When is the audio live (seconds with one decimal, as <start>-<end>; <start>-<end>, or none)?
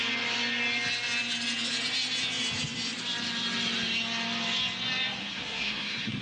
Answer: 0.0-5.2